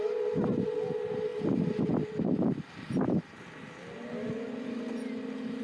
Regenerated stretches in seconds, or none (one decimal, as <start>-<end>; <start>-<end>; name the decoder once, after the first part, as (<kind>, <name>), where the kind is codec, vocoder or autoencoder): none